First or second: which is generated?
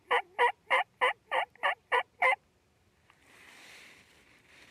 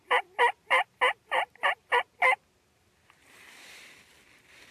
first